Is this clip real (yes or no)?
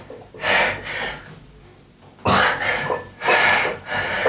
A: yes